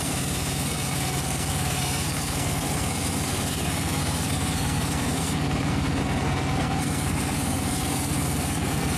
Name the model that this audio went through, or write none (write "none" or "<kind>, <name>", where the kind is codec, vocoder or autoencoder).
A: codec, SNAC